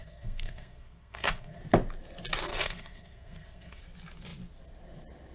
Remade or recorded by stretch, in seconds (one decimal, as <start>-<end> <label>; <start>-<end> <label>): 0.0-1.6 remade; 1.6-2.5 recorded; 2.5-3.8 remade; 3.8-5.3 recorded